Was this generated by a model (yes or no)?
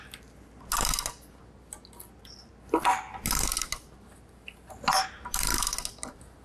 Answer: no